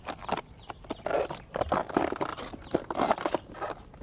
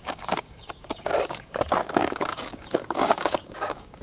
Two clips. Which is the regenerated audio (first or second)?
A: second